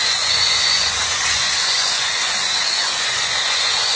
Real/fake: fake